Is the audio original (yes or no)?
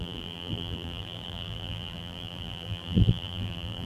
no